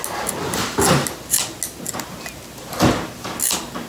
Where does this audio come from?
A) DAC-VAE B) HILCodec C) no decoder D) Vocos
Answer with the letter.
C